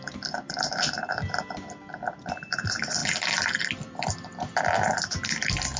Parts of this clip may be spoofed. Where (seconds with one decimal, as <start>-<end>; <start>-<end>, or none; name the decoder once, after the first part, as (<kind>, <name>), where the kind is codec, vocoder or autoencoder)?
0.0-3.0 (vocoder, BigVGAN v2); 3.7-5.8